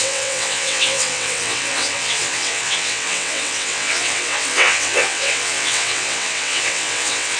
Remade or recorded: remade